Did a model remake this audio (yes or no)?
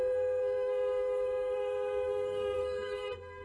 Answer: yes